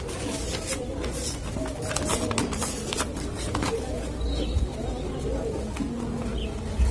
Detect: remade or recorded recorded